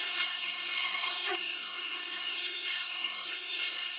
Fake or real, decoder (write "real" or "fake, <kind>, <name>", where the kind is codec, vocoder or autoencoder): fake, codec, SNAC